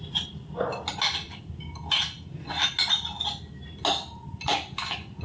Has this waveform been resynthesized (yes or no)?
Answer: no